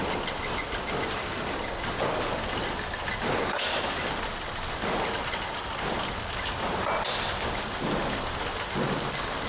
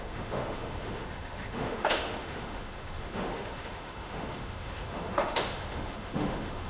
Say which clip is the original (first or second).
first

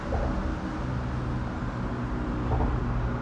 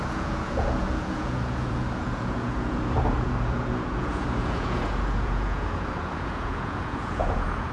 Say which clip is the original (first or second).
first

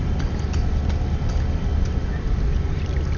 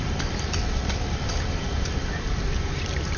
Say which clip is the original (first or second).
first